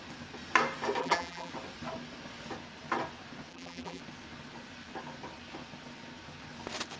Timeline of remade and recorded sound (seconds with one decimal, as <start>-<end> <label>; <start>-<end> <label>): 0.0-1.0 recorded; 1.0-1.5 remade; 1.5-3.5 recorded; 3.5-4.0 remade; 4.0-7.0 recorded